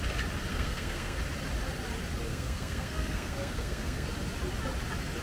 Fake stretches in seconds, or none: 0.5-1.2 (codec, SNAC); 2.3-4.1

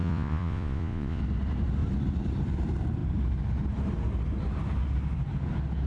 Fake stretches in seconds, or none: 0.0-1.2 (vocoder, Vocos)

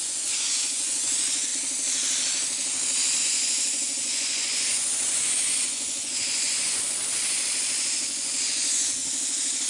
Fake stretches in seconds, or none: 0.0-1.5 (vocoder, Vocos); 3.2-7.0; 7.6-9.0

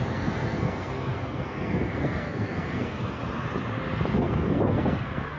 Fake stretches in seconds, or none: 0.0-3.2 (codec, SNAC); 4.1-5.4

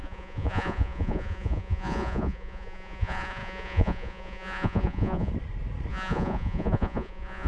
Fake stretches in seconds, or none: 0.0-5.3 (vocoder, Vocos); 5.9-7.5